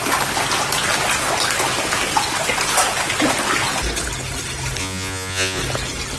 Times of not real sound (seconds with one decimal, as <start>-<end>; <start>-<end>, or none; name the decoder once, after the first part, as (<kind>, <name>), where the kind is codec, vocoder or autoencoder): 4.8-5.6 (vocoder, Vocos)